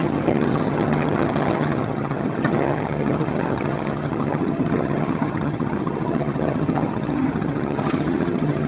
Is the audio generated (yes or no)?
yes